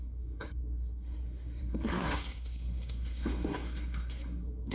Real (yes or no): no